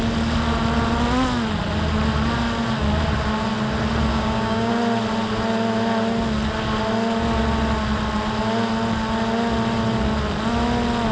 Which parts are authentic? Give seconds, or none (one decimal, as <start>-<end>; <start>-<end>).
0.0-4.1; 4.7-11.1